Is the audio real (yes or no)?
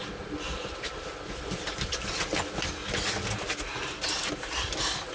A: yes